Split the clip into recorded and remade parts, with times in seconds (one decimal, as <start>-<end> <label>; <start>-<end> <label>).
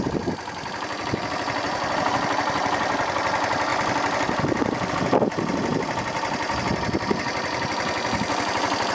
0.0-8.9 recorded